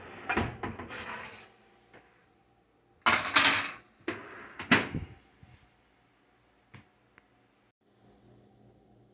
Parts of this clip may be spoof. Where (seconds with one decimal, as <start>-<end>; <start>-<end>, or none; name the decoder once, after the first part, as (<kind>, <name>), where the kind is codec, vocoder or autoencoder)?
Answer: none